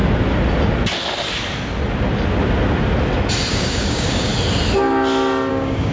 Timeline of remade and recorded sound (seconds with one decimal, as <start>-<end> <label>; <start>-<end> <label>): 0.0-3.5 recorded; 3.5-4.3 remade; 4.3-5.5 recorded; 5.5-5.9 remade